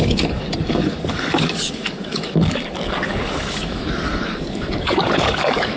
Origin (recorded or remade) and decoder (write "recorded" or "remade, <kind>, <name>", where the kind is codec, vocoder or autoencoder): remade, codec, DAC